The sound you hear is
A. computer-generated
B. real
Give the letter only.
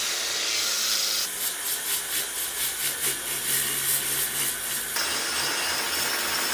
B